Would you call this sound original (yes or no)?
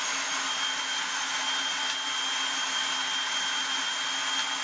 yes